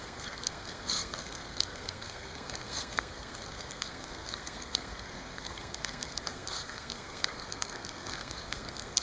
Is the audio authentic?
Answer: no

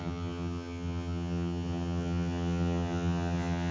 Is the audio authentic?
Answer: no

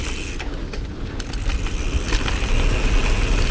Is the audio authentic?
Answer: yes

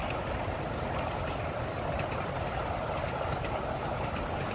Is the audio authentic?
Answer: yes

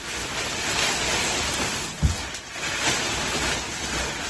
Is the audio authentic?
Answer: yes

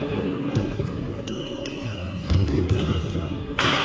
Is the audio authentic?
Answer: no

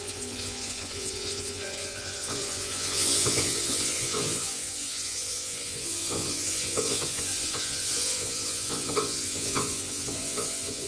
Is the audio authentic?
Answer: no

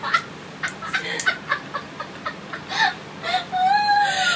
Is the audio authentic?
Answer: yes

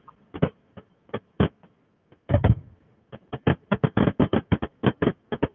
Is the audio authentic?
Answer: no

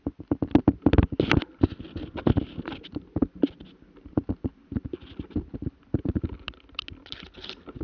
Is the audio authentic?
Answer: yes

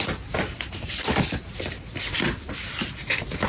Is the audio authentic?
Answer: no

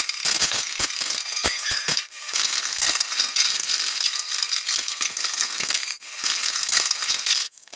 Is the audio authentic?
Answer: no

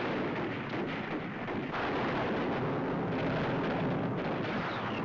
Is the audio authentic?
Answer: yes